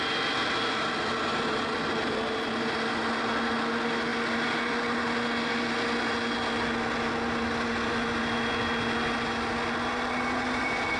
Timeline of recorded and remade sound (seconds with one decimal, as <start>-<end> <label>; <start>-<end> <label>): 0.0-11.0 recorded